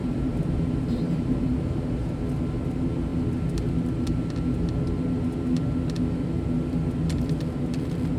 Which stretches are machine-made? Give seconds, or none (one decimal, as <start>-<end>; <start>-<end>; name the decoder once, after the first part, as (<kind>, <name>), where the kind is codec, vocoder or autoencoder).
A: 0.0-1.8 (vocoder, BigVGAN v2)